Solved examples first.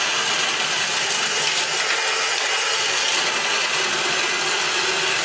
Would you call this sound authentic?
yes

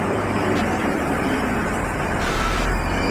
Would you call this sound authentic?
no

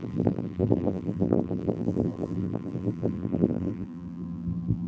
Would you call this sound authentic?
no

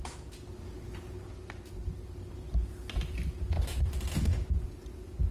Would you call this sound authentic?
yes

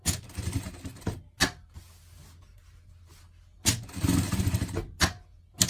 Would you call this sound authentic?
yes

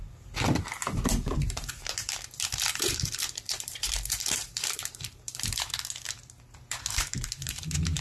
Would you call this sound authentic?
no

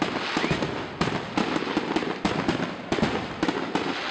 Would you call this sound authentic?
yes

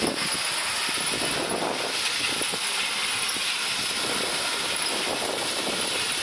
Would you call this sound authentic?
yes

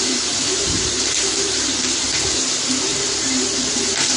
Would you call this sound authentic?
no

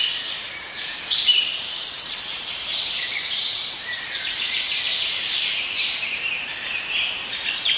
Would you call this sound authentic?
no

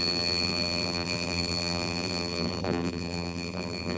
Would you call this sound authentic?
no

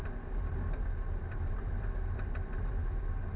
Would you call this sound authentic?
yes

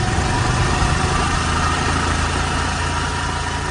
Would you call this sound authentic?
yes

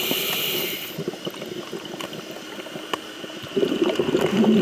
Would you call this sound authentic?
yes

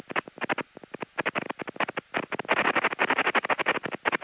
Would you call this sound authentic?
yes